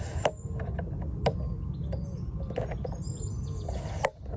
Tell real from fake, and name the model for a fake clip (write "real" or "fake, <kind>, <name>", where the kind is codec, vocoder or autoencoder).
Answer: real